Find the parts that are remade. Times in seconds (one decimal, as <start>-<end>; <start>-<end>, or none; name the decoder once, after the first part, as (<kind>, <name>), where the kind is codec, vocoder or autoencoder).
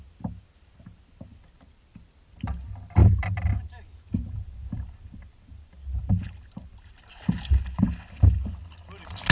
3.0-7.5 (vocoder, BigVGAN v2)